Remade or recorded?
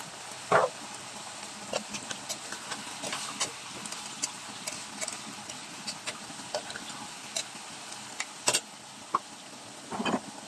recorded